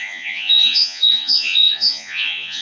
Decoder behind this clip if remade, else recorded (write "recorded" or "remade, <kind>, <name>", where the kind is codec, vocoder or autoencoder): remade, vocoder, Vocos